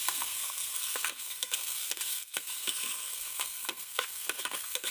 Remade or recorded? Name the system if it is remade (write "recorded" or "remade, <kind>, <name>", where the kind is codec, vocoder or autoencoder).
remade, codec, SNAC